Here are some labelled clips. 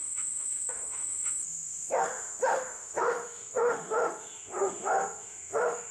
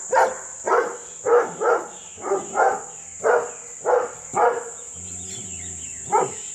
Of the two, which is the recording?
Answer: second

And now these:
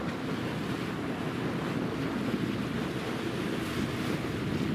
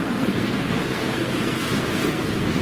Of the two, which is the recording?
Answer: first